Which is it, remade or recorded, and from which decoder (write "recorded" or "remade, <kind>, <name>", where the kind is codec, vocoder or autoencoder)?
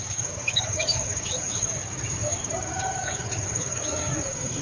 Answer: remade, codec, DAC